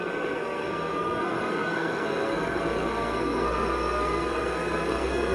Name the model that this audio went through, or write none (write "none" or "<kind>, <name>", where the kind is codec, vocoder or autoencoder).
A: codec, SNAC